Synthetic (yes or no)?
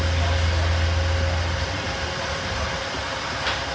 no